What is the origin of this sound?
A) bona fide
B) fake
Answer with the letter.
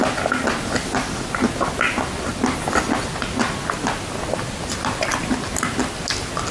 A